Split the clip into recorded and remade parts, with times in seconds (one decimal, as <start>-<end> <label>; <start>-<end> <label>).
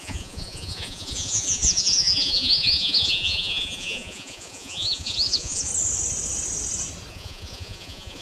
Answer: 0.0-5.7 remade; 5.7-7.1 recorded; 7.1-8.2 remade